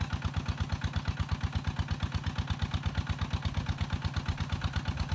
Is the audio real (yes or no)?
yes